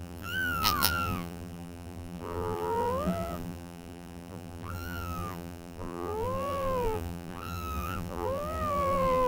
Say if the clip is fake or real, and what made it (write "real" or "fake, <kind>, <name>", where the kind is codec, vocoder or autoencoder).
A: fake, vocoder, BigVGAN v2